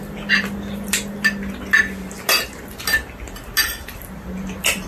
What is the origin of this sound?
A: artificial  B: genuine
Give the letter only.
B